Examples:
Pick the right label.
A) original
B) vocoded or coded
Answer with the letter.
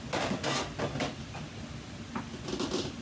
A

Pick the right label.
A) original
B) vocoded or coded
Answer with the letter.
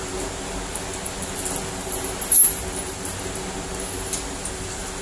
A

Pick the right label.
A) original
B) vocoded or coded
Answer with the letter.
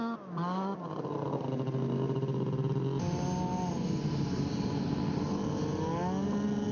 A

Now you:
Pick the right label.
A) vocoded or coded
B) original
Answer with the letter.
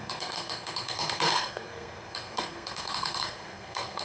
A